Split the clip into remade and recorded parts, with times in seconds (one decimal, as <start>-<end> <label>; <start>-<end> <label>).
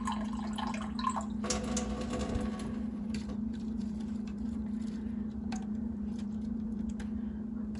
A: 0.0-2.9 recorded; 2.9-7.0 remade; 7.0-7.8 recorded